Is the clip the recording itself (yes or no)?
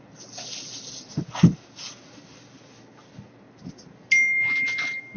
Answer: yes